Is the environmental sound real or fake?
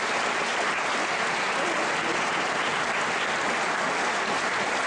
real